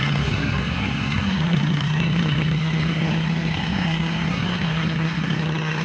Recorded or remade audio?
remade